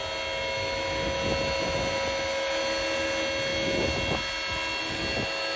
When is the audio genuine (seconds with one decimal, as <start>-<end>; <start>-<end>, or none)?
0.0-5.6